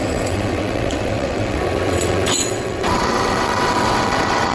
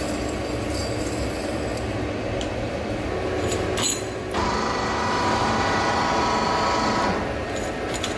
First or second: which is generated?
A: first